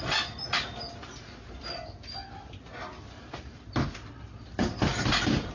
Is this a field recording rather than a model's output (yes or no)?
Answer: yes